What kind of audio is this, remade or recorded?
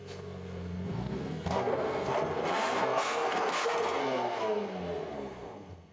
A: remade